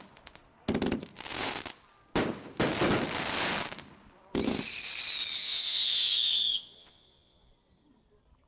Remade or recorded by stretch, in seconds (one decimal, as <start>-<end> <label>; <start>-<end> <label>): 0.0-5.4 recorded; 5.4-7.5 remade; 7.5-8.5 recorded